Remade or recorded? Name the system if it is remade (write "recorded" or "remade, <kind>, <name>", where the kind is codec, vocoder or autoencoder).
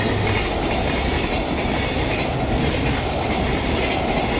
recorded